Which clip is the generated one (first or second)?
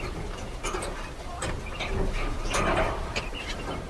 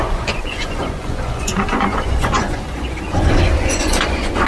second